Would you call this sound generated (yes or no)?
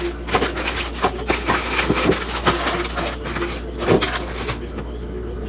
no